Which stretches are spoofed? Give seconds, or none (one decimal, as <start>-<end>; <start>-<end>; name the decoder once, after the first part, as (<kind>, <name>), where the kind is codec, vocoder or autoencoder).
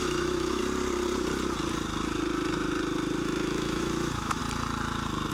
0.0-0.6 (autoencoder, DAC-VAE); 3.2-4.4